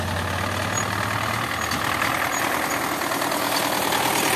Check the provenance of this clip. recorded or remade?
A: recorded